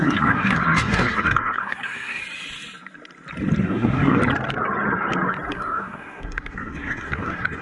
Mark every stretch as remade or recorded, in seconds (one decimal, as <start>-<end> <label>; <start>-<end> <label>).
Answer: 0.0-2.2 remade; 2.2-3.6 recorded; 3.6-4.2 remade; 4.2-5.5 recorded; 5.5-7.6 remade